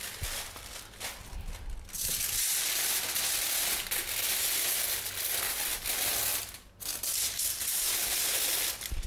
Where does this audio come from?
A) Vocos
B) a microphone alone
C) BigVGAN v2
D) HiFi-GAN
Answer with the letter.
B